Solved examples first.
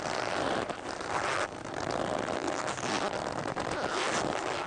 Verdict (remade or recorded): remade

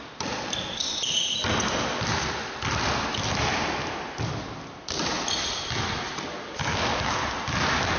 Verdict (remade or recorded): recorded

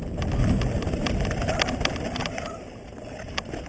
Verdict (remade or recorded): recorded